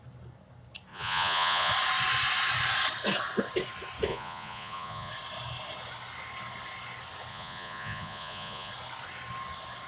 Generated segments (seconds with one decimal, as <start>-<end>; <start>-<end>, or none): 0.9-1.7; 4.1-5.1; 7.3-8.7